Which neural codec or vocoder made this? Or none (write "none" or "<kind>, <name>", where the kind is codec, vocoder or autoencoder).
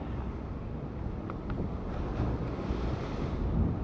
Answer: none